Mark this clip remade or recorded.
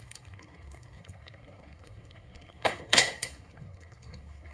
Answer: remade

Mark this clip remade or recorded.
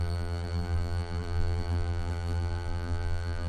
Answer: remade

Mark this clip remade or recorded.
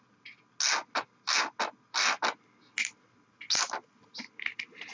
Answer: recorded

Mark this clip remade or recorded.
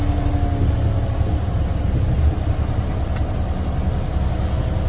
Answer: recorded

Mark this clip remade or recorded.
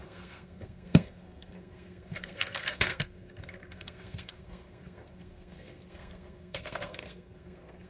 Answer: remade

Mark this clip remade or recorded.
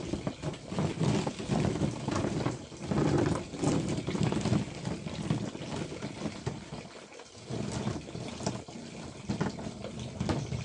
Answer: recorded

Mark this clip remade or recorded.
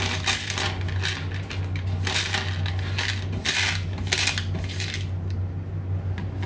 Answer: recorded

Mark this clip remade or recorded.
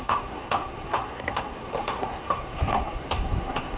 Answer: remade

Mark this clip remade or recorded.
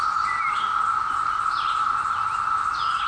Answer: recorded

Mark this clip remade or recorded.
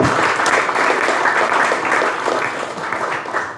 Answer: recorded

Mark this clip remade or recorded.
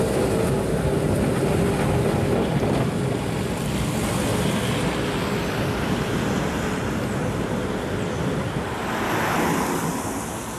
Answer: recorded